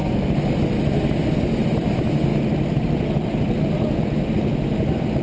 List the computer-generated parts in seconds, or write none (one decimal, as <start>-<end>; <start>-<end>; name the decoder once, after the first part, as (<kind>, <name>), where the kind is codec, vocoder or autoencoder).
none